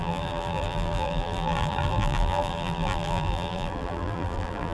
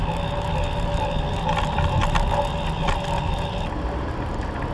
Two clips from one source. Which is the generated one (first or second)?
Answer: first